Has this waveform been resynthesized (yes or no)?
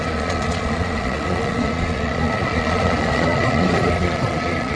yes